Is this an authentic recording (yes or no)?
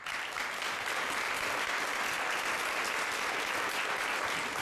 yes